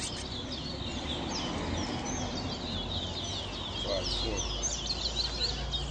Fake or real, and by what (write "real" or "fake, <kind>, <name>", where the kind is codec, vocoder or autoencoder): real